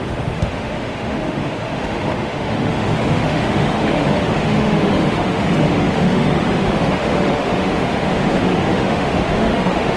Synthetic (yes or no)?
yes